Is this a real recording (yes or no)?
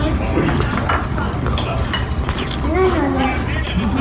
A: yes